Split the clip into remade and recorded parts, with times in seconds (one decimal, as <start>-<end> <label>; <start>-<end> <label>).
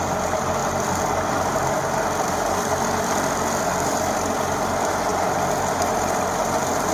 0.0-6.9 recorded